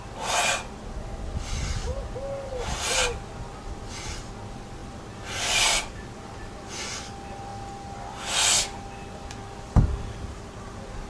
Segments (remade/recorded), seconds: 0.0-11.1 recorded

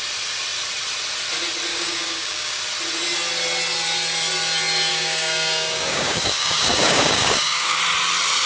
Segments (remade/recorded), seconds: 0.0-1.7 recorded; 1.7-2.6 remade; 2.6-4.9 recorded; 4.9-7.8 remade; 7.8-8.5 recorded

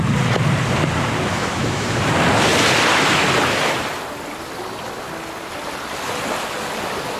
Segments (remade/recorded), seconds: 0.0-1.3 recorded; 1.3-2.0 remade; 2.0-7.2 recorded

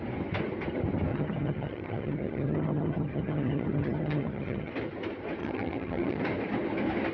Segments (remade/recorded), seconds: 0.0-1.1 recorded; 1.1-4.7 remade; 4.7-5.4 recorded; 5.4-6.2 remade; 6.2-7.1 recorded